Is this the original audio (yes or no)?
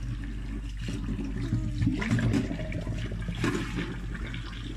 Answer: yes